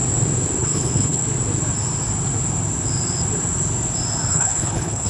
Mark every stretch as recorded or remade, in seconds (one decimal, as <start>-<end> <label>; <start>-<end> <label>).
0.0-0.6 recorded; 0.6-1.2 remade; 1.2-4.3 recorded; 4.3-5.1 remade